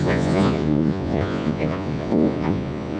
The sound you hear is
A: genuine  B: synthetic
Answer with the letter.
B